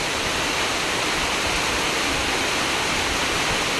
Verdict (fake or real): real